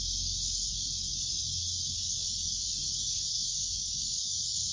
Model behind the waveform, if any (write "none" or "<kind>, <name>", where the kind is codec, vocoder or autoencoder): codec, DAC